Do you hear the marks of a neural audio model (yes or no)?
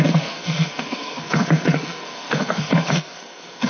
yes